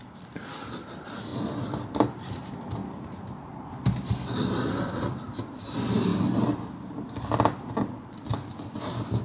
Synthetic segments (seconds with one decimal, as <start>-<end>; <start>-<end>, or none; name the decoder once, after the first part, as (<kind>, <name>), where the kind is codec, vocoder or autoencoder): 1.3-2.3 (vocoder, BigVGAN v2); 2.8-5.2